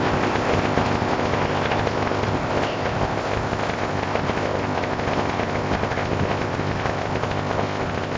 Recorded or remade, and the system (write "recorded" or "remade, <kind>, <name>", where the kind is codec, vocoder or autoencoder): remade, codec, ZipCodec